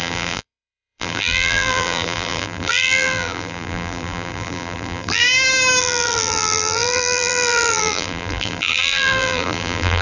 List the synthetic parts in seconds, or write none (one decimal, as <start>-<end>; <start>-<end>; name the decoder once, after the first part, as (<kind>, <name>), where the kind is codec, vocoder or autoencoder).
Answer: 0.0-5.2 (vocoder, BigVGAN v2); 5.8-10.0